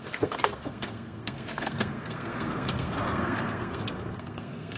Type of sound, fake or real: fake